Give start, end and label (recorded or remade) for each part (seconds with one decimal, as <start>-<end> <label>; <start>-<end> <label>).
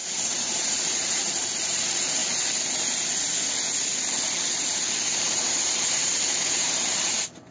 0.0-2.2 remade; 2.2-4.4 recorded; 4.4-7.5 remade